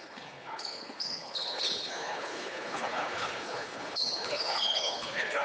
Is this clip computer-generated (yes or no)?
yes